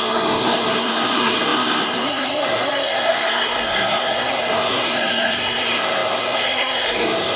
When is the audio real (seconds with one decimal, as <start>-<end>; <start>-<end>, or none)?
none